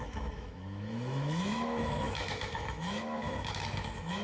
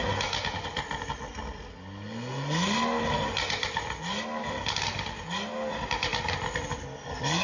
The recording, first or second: second